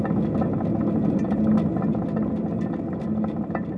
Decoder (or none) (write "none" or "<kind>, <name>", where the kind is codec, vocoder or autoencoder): none